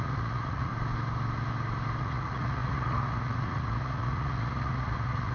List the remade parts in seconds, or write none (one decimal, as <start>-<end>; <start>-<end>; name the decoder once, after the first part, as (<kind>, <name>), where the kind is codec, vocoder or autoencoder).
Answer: 0.0-0.7 (vocoder, Vocos); 2.0-5.3